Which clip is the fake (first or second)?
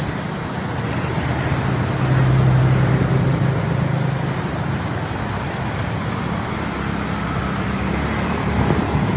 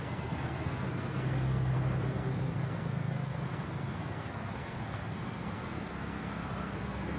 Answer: second